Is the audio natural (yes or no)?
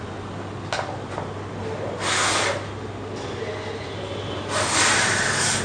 yes